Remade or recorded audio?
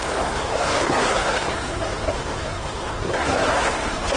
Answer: remade